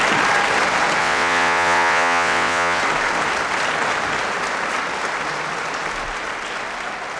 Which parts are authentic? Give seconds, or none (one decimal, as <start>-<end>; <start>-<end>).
0.0-1.0; 2.8-7.2

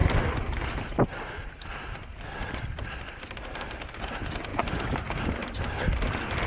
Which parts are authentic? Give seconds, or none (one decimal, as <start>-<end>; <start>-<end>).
1.0-2.1; 4.1-4.5